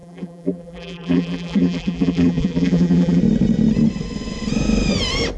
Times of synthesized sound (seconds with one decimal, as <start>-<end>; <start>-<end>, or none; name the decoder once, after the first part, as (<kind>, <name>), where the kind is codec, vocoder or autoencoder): 0.0-3.2 (vocoder, BigVGAN v2)